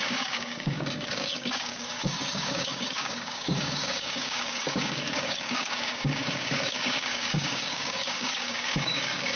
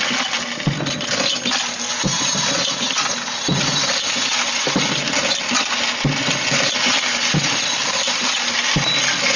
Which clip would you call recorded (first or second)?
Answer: second